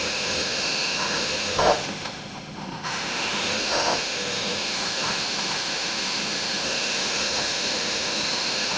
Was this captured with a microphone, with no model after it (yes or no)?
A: no